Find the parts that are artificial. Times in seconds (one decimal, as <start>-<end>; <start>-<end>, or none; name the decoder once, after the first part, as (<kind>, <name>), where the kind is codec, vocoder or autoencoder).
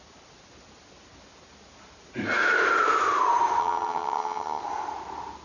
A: 3.6-4.6 (vocoder, HiFi-GAN)